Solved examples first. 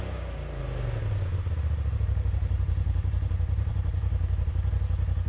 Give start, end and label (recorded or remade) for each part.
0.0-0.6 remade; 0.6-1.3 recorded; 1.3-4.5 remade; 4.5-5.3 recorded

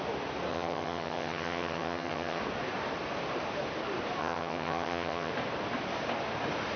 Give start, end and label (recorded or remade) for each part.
0.0-0.5 recorded; 0.5-2.4 remade; 2.4-4.2 recorded; 4.2-5.3 remade; 5.3-6.8 recorded

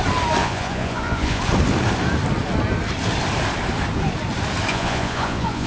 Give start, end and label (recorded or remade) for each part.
0.0-0.4 recorded; 0.4-1.4 remade; 1.4-4.7 recorded; 4.7-5.7 remade

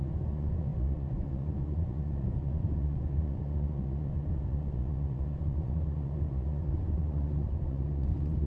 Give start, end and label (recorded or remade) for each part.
0.0-8.5 remade

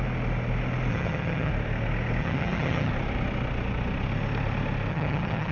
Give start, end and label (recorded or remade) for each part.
0.0-0.9 recorded; 0.9-1.5 remade; 1.5-2.2 recorded; 2.2-2.9 remade; 2.9-4.9 recorded; 4.9-5.5 remade

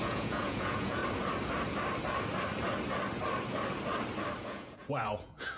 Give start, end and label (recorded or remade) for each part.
0.0-1.0 remade; 1.0-4.4 recorded; 4.4-5.6 remade

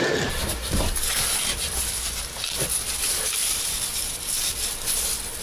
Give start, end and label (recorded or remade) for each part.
0.0-0.4 recorded; 0.4-0.9 remade; 0.9-1.5 recorded; 1.5-3.9 remade; 3.9-5.4 recorded

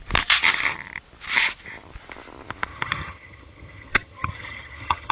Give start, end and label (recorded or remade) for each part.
0.0-2.7 recorded; 2.7-5.1 remade